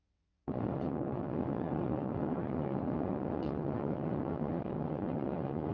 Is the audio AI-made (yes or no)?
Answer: yes